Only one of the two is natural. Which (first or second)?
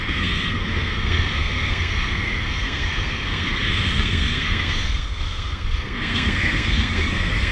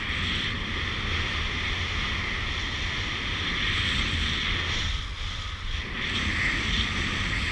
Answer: second